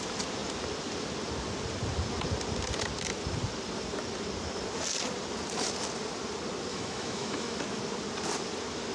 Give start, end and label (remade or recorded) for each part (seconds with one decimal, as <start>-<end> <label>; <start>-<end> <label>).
0.0-6.7 recorded; 6.7-7.6 remade; 7.6-8.9 recorded